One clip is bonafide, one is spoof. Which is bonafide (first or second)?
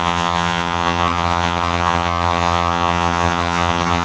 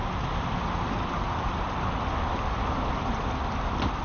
second